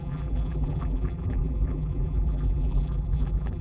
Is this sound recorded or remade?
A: remade